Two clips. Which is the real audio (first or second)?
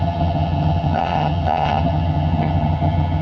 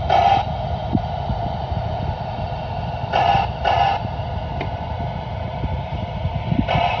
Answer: second